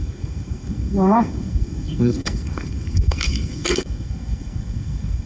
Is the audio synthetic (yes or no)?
yes